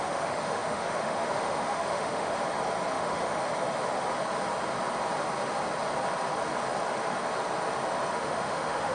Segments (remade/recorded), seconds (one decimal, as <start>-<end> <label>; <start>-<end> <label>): 0.0-2.3 remade; 2.3-2.9 recorded; 2.9-3.4 remade; 3.4-8.1 recorded; 8.1-8.9 remade